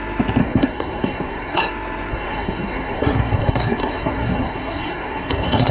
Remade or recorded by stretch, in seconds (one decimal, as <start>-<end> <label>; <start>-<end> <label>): 0.0-0.4 recorded; 0.4-1.6 remade; 1.6-2.1 recorded; 2.1-5.7 remade